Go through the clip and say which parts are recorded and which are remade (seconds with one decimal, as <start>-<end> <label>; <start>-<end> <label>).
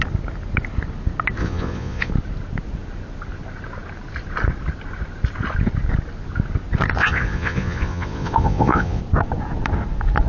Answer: 0.0-1.4 recorded; 1.4-2.1 remade; 2.1-7.0 recorded; 7.0-9.0 remade; 9.0-10.3 recorded